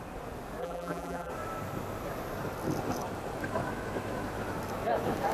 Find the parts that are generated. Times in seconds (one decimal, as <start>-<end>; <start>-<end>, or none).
0.6-1.3

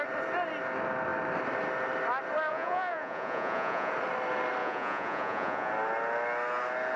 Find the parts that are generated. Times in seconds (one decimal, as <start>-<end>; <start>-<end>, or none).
2.5-3.9; 4.6-5.7